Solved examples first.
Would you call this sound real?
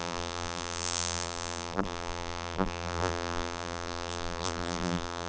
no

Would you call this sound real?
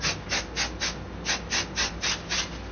yes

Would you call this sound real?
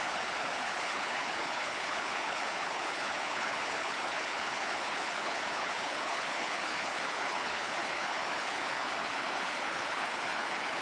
no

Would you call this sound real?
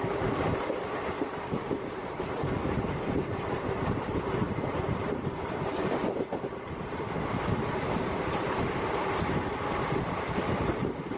no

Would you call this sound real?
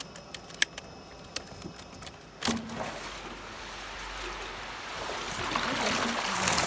yes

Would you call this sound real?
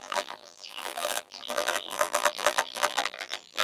no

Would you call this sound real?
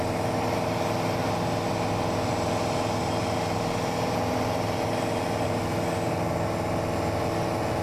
yes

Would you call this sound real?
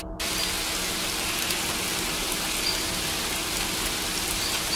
yes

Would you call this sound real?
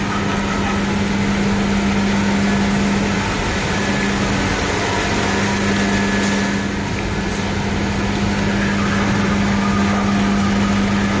yes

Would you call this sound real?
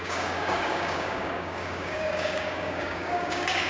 no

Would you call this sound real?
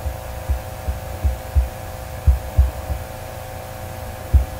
yes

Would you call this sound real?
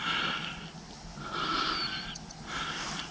yes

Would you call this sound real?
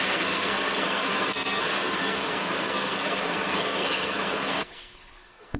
no